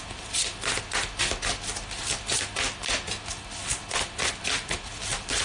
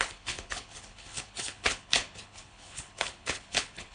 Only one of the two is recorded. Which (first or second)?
first